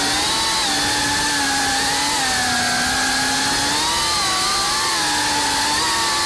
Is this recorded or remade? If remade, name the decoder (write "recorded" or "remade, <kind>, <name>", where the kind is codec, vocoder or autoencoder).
recorded